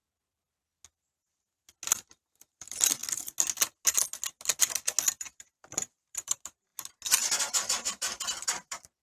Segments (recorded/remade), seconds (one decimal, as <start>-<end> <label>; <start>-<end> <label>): 0.0-1.9 recorded; 1.9-3.0 remade; 3.0-5.1 recorded; 5.1-6.7 remade; 6.7-7.4 recorded; 7.4-9.0 remade